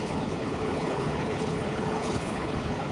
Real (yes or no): no